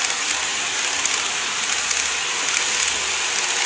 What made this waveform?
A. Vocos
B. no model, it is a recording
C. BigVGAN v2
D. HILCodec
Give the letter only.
B